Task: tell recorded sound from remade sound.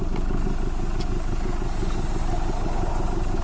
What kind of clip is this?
recorded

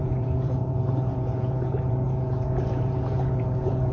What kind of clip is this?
remade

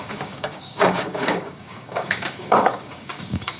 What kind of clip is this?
remade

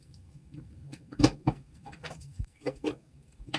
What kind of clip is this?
remade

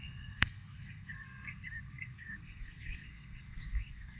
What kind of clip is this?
remade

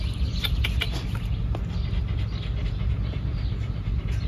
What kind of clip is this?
recorded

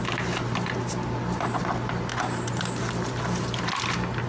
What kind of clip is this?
recorded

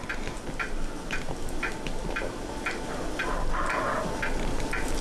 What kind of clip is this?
recorded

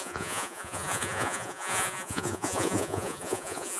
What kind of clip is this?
remade